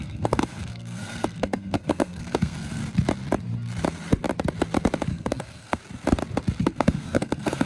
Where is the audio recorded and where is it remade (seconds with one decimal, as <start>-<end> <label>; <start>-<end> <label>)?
0.0-2.8 remade; 2.8-5.1 recorded; 5.1-5.8 remade; 5.8-6.6 recorded; 6.6-7.7 remade